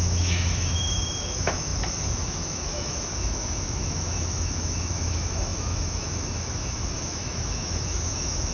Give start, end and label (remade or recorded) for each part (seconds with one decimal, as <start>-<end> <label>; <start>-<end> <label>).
0.0-8.5 remade